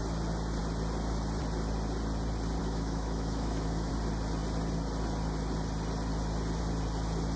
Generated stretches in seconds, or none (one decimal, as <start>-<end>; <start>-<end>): 2.6-3.9